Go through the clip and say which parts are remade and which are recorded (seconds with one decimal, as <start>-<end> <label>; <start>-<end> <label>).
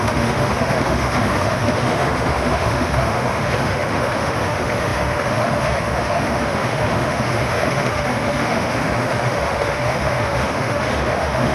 0.0-11.5 remade